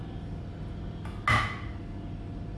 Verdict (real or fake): real